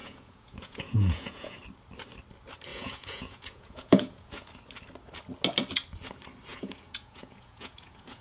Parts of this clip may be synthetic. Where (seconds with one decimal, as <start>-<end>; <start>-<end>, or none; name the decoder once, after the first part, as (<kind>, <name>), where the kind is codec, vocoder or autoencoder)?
0.0-1.6 (vocoder, Vocos); 2.7-4.5; 6.5-8.2